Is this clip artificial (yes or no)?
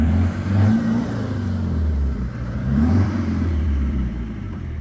yes